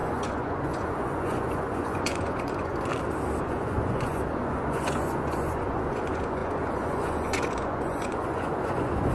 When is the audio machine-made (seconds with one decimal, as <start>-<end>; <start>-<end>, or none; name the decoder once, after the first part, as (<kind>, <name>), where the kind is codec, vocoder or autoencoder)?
0.0-2.9 (vocoder, Vocos); 3.4-9.1